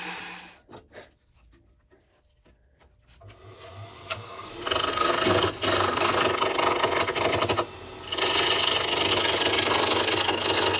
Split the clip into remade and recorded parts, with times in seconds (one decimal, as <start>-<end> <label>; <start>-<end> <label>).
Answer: 0.0-4.0 recorded; 4.0-4.5 remade; 4.5-4.9 recorded; 4.9-6.2 remade; 6.2-10.8 recorded